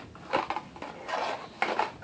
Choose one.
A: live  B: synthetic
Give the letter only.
A